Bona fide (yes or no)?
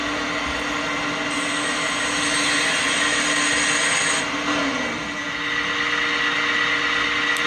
yes